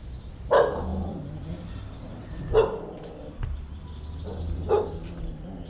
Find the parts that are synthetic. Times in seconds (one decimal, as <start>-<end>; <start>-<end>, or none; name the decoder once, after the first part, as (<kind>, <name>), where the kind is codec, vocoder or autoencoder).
none